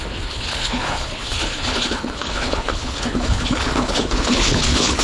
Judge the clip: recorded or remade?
remade